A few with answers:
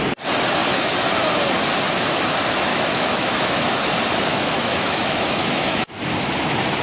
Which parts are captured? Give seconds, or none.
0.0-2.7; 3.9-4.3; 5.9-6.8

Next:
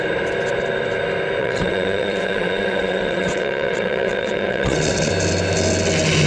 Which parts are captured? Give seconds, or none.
0.0-1.4; 5.1-6.3